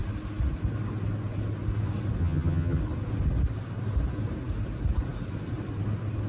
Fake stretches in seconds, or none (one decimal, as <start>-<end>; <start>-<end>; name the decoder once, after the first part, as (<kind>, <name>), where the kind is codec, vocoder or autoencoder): 2.2-2.8 (vocoder, HiFi-GAN)